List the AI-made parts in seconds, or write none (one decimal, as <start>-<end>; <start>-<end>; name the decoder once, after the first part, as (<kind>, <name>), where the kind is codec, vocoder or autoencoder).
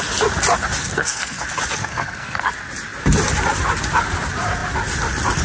0.8-1.4 (codec, SNAC); 1.8-2.5